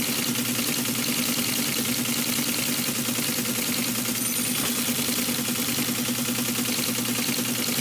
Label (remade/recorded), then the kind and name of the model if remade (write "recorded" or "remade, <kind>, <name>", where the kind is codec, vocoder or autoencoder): recorded